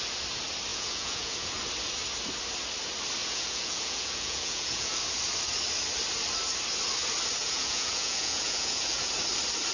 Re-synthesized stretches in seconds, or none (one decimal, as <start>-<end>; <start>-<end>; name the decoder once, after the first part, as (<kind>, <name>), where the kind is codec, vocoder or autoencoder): 0.7-1.5 (vocoder, Vocos); 3.2-4.9; 7.4-9.1